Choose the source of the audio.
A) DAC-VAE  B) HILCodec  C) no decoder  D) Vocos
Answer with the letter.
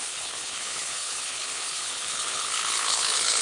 B